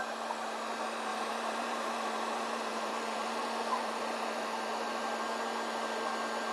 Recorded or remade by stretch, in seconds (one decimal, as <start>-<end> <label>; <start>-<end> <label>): 0.0-1.1 recorded; 1.1-5.0 remade; 5.0-6.5 recorded

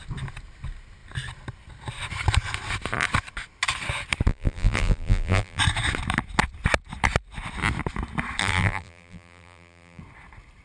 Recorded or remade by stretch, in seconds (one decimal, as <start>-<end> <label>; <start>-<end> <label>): 0.0-4.3 recorded; 4.3-5.6 remade; 5.6-8.4 recorded; 8.4-10.0 remade; 10.0-10.6 recorded

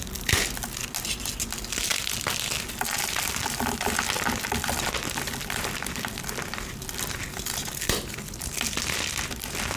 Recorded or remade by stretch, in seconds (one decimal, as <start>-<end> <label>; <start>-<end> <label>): 0.0-9.8 recorded

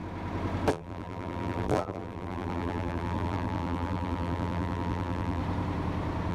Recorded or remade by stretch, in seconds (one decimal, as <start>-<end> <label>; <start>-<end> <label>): 0.0-0.7 recorded; 0.7-5.4 remade; 5.4-6.3 recorded

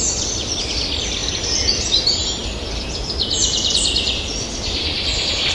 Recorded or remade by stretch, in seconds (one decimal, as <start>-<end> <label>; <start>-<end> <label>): 0.0-2.4 remade; 2.4-3.7 recorded; 3.7-5.5 remade

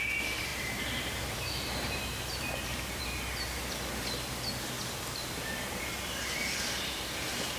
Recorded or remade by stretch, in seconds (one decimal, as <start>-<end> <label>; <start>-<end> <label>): 0.0-0.5 recorded; 0.5-3.0 remade; 3.0-7.6 recorded